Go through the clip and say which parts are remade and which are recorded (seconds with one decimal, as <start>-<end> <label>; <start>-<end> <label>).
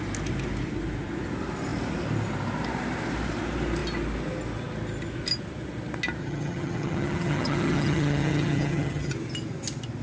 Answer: 0.0-6.2 recorded; 6.2-9.1 remade; 9.1-10.0 recorded